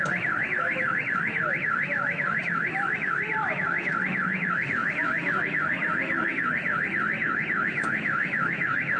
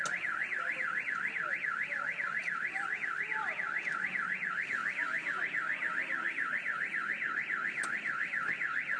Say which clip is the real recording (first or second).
second